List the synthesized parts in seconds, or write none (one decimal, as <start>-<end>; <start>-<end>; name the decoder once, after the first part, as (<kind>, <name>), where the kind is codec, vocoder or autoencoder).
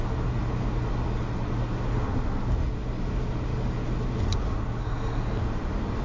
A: 4.8-5.4 (codec, SNAC)